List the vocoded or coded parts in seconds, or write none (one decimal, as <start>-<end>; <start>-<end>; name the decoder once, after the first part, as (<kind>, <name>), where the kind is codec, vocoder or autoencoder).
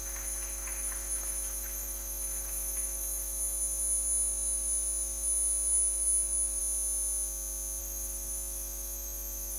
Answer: 0.0-6.6 (autoencoder, DAC-VAE); 7.8-9.6